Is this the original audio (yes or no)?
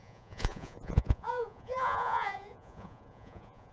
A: no